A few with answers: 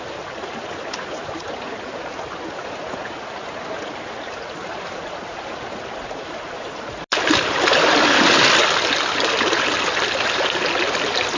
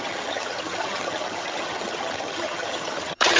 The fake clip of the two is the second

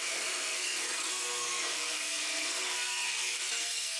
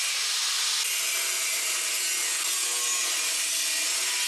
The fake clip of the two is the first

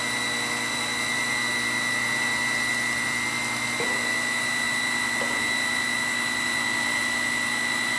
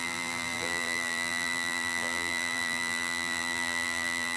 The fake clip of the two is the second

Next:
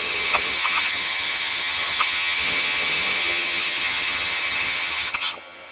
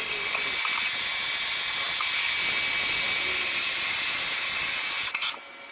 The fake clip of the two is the first